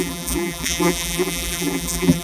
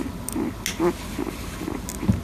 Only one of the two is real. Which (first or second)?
second